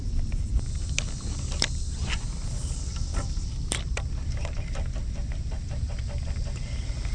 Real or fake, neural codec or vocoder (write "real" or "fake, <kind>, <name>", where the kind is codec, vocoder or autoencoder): real